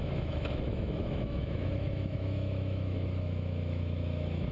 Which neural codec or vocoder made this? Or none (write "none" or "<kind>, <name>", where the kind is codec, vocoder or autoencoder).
autoencoder, DAC-VAE